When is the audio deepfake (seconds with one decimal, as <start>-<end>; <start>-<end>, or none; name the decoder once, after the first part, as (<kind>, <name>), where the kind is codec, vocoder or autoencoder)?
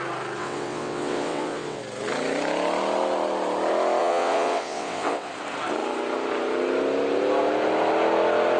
0.4-1.8 (vocoder, WaveNeXt); 4.0-5.3